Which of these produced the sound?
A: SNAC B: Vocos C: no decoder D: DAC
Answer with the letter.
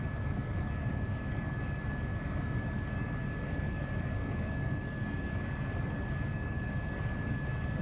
D